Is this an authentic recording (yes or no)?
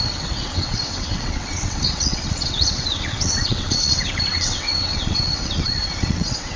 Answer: no